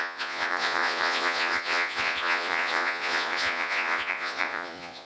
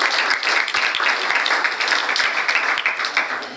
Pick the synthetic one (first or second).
first